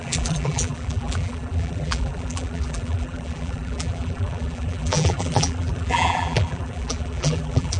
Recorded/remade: remade